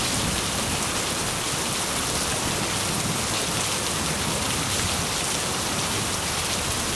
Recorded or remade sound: recorded